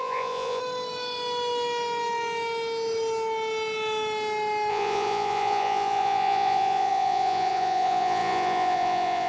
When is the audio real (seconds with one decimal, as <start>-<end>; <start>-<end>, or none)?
0.6-4.7